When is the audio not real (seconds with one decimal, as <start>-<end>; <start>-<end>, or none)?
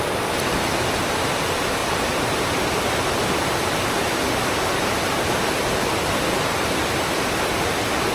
none